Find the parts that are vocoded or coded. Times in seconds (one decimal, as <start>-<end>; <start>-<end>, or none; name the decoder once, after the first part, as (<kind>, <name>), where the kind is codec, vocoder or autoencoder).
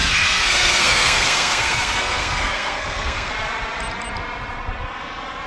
0.0-3.3 (codec, SNAC)